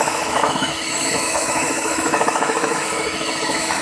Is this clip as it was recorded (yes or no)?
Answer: no